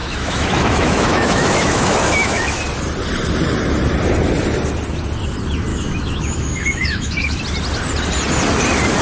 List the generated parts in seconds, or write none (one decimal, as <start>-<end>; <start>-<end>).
0.0-2.6; 5.7-7.4

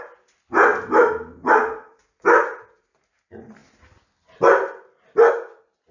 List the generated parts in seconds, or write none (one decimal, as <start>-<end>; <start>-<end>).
none

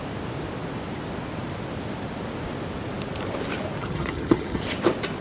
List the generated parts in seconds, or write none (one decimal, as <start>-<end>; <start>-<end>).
3.8-4.6

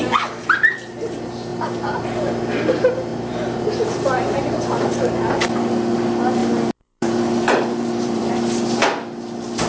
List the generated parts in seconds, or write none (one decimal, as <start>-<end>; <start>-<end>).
1.5-2.3; 3.1-3.6; 6.4-8.3

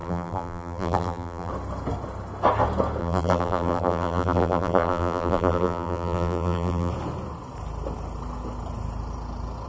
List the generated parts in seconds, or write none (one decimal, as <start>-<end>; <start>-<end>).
0.0-1.5; 3.0-6.9

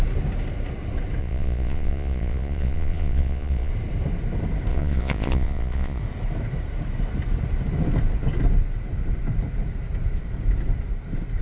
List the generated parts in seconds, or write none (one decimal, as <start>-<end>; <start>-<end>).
1.2-3.7; 4.7-6.0

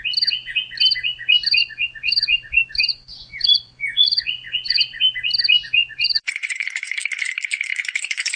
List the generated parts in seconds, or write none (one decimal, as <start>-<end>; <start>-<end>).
1.6-5.0; 5.8-7.0